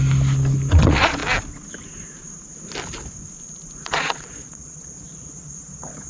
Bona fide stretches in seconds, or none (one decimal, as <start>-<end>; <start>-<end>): 0.0-0.7; 1.2-3.8